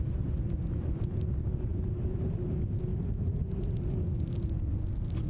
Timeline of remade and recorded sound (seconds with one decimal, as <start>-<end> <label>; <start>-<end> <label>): 0.0-5.3 recorded

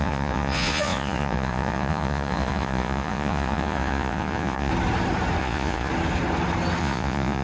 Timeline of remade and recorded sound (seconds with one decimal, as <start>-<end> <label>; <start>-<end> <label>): 0.0-4.7 remade; 4.7-5.4 recorded; 5.4-5.9 remade; 5.9-6.8 recorded; 6.8-7.4 remade